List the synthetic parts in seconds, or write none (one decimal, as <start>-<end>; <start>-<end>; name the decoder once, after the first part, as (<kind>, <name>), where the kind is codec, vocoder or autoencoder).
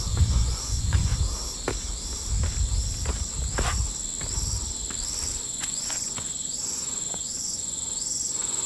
0.0-1.1 (vocoder, Vocos); 5.3-8.7